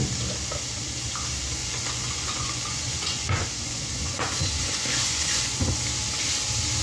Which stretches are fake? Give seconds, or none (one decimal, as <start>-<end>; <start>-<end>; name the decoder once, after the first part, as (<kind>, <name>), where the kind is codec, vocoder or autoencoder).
1.6-5.7 (vocoder, Vocos)